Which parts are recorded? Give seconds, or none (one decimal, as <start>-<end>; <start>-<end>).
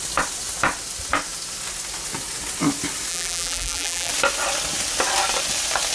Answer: 0.0-3.1; 4.1-5.9